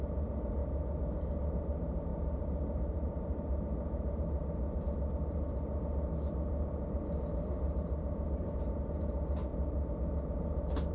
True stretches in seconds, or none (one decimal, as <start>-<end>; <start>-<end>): 0.0-10.9